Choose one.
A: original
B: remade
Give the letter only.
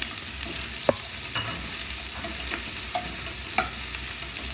A